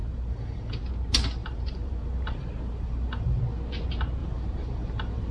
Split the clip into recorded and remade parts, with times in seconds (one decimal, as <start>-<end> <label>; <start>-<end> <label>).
0.0-0.8 remade; 0.8-1.4 recorded; 1.4-3.4 remade; 3.4-4.2 recorded; 4.2-5.3 remade